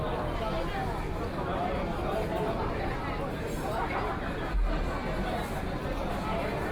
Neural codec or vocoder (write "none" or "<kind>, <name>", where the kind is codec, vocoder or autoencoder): none